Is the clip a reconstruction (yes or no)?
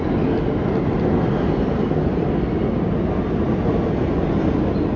no